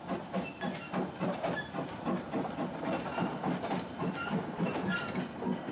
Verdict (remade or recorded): recorded